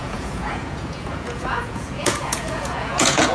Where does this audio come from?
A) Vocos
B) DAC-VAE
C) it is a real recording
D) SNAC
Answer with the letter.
A